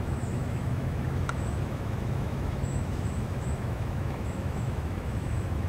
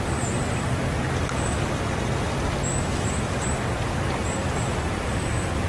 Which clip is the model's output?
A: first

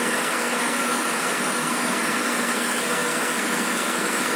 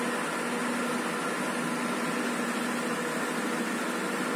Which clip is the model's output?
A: first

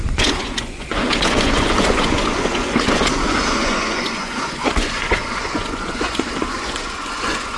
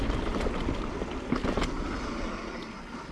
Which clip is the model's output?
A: first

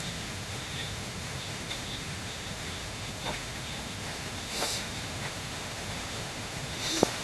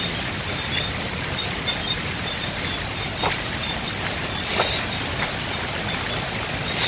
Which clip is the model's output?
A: first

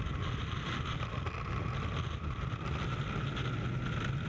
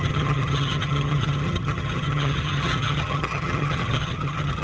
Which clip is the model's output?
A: second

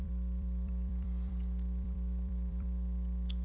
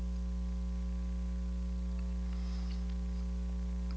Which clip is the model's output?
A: first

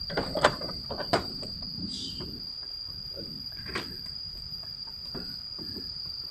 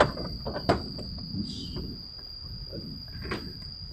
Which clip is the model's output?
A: first